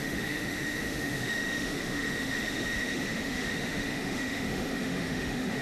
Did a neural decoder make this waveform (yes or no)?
yes